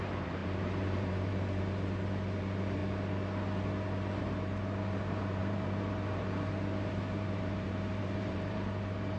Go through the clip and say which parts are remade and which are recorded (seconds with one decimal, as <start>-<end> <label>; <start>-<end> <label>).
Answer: 0.0-2.8 remade; 2.8-4.2 recorded; 4.2-9.2 remade